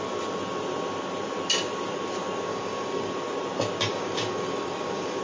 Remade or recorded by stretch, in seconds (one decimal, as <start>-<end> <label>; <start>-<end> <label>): 0.0-2.5 recorded; 2.5-3.1 remade; 3.1-3.9 recorded; 3.9-5.2 remade